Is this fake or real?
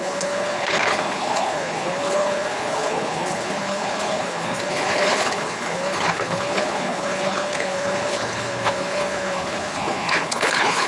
fake